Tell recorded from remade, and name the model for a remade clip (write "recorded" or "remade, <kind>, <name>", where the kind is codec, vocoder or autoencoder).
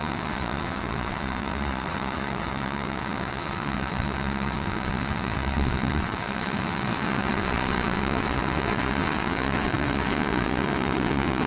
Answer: remade, vocoder, WaveNeXt